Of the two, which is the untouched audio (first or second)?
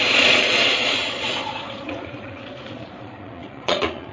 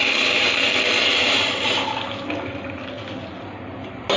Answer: second